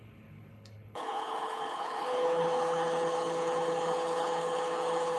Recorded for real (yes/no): no